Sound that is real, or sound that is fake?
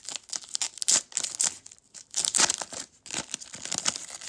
real